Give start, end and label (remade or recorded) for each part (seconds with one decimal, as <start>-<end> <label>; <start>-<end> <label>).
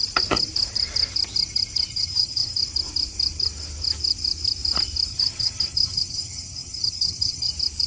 0.0-1.9 recorded; 1.9-2.6 remade; 2.6-5.1 recorded; 5.1-7.5 remade; 7.5-7.9 recorded